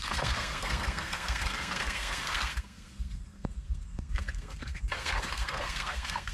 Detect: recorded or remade remade